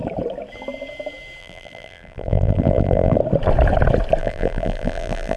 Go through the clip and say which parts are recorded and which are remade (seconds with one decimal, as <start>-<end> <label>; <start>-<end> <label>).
0.0-1.4 recorded; 1.4-3.2 remade; 3.2-4.2 recorded; 4.2-5.4 remade